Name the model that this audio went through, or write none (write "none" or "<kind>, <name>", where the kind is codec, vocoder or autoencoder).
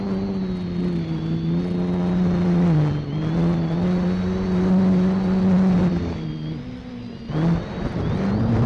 none